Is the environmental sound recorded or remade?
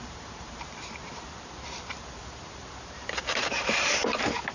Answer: remade